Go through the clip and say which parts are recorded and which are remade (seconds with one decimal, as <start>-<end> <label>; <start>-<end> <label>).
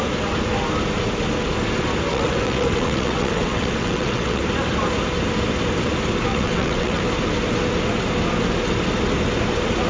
0.0-2.1 recorded; 2.1-4.4 remade; 4.4-6.3 recorded; 6.3-7.0 remade; 7.0-9.9 recorded